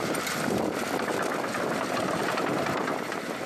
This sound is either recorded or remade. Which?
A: recorded